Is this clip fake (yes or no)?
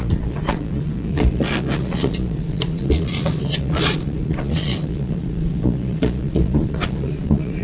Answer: yes